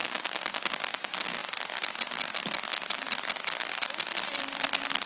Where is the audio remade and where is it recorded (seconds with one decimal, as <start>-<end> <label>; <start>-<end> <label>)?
0.0-5.1 recorded